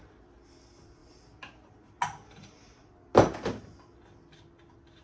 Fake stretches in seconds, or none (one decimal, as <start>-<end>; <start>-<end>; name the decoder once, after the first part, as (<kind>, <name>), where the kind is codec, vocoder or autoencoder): none